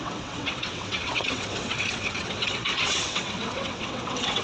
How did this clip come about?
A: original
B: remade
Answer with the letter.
B